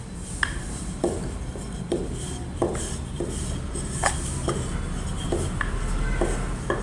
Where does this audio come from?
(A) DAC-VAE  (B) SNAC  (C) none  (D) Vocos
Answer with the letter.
C